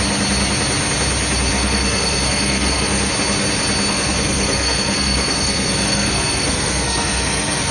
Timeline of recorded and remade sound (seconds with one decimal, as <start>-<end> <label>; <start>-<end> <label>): 0.0-1.5 recorded; 1.5-3.1 remade; 3.1-3.9 recorded; 3.9-7.7 remade